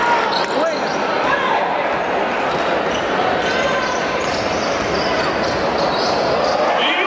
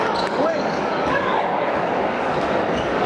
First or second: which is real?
first